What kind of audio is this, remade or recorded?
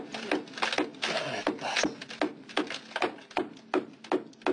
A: recorded